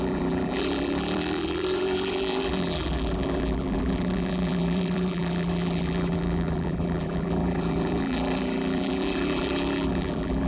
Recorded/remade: remade